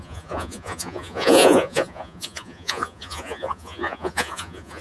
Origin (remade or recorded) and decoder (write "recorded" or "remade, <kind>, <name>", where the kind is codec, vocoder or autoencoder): remade, vocoder, Vocos